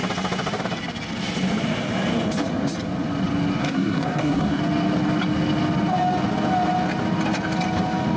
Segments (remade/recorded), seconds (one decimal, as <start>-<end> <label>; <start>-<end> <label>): 0.0-3.6 recorded; 3.6-4.6 remade; 4.6-8.2 recorded